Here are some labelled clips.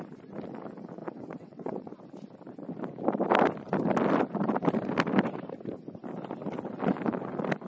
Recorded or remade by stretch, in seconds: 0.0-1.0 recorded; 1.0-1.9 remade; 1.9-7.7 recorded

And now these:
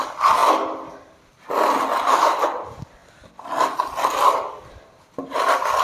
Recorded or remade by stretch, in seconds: 0.0-5.8 recorded

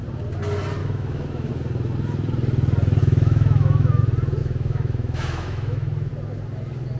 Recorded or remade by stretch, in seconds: 0.0-0.8 recorded; 0.8-1.5 remade; 1.5-3.0 recorded; 3.0-4.0 remade; 4.0-4.4 recorded; 4.4-6.1 remade; 6.1-7.0 recorded

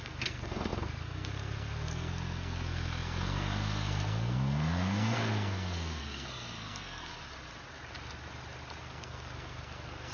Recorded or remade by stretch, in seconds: 0.0-7.1 remade; 7.1-8.8 recorded; 8.8-10.1 remade

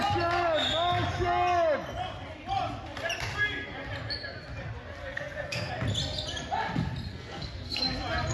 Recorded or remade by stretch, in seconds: 0.0-5.0 recorded; 5.0-5.7 remade; 5.7-7.1 recorded; 7.1-7.8 remade; 7.8-8.3 recorded

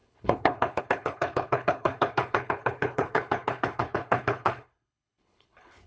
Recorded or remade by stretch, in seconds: 0.0-5.9 remade

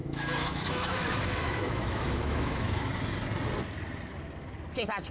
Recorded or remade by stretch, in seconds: 0.0-2.9 remade; 2.9-5.1 recorded